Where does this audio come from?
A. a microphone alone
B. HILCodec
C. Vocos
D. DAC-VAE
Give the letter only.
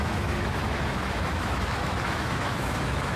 D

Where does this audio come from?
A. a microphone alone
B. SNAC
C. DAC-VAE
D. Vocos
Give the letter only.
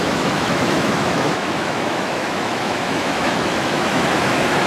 C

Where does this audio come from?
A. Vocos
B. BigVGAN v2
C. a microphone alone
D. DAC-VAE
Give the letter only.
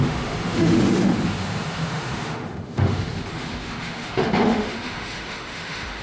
D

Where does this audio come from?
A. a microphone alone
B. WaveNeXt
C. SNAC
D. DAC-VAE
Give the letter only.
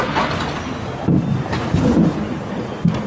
A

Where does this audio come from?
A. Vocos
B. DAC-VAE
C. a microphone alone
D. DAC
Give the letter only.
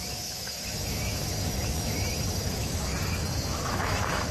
B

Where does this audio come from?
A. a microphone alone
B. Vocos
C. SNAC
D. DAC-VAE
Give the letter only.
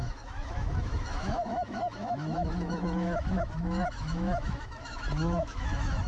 D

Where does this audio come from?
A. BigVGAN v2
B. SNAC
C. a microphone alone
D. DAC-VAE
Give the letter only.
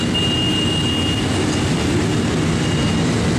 C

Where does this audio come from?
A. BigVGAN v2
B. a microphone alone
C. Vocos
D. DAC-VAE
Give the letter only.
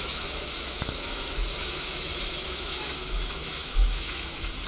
D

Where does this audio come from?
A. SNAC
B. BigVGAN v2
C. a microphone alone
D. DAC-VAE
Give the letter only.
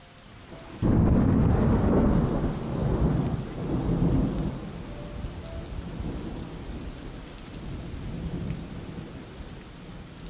C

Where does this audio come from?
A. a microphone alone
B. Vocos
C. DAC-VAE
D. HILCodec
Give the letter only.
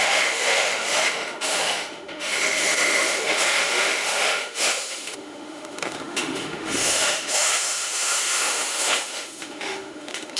C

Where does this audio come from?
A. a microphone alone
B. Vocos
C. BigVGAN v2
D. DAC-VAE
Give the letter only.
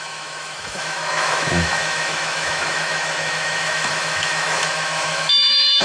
D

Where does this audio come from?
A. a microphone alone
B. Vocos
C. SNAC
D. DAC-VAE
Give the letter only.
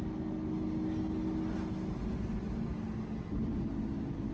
A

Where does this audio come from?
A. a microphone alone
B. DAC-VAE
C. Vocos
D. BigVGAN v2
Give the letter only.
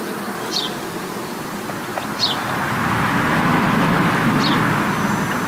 A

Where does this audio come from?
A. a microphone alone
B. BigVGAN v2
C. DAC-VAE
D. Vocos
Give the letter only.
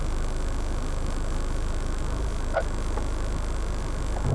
A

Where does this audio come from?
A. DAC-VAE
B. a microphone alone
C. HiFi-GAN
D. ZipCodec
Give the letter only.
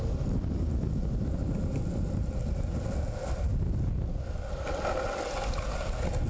B